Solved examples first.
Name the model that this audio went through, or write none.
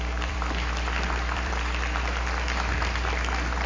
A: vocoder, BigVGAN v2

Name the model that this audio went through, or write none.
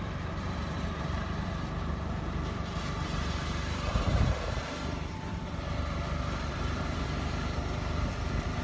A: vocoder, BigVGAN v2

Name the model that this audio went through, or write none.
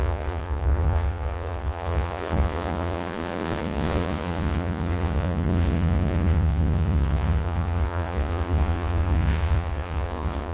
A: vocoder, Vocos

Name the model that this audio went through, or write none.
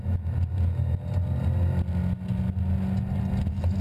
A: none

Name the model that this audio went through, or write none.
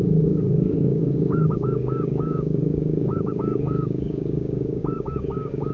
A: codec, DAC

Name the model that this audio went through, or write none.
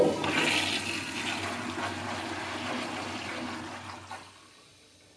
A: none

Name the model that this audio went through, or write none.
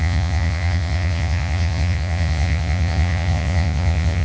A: vocoder, Vocos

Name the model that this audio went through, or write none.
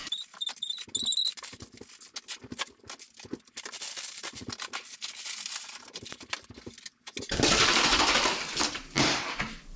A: none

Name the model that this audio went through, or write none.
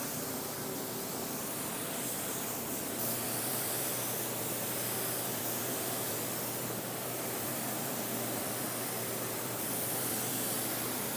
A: vocoder, BigVGAN v2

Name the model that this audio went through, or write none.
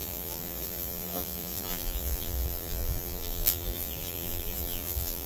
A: vocoder, BigVGAN v2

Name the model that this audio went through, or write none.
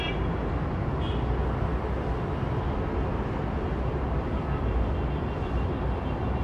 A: none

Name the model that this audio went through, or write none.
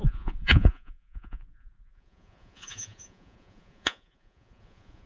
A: vocoder, Vocos